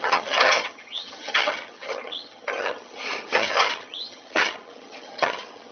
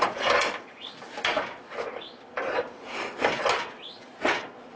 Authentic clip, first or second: second